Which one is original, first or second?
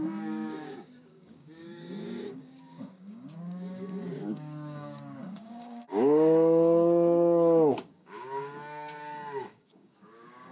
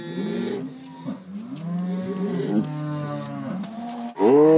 second